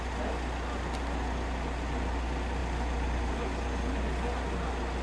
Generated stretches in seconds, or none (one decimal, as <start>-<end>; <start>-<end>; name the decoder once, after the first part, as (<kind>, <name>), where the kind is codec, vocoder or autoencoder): none